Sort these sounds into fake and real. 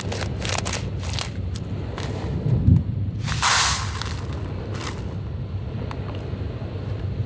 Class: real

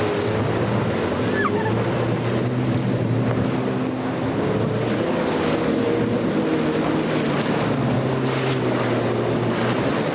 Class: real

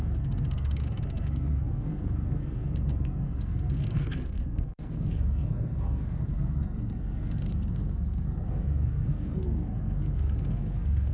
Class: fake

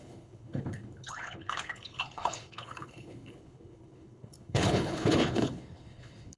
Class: fake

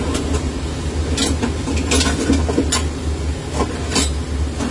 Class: real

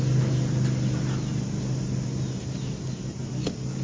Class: real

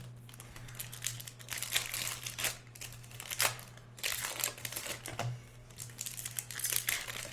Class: real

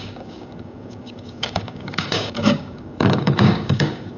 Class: fake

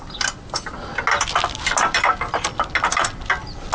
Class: real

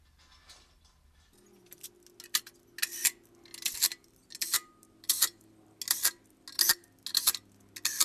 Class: real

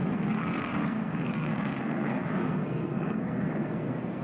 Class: fake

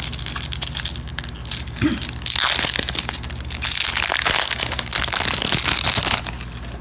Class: real